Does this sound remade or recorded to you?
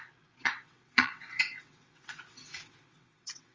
remade